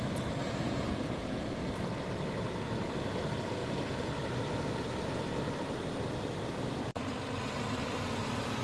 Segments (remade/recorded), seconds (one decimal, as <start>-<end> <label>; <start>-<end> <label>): 0.0-0.4 recorded; 0.4-1.6 remade; 1.6-3.6 recorded; 3.6-4.1 remade; 4.1-8.6 recorded

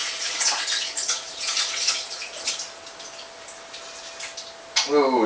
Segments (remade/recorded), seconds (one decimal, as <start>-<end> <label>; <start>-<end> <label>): 0.0-2.5 remade; 2.5-5.3 recorded

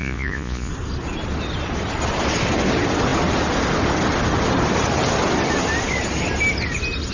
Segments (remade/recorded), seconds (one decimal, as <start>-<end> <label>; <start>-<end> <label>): 0.0-0.7 remade; 0.7-7.1 recorded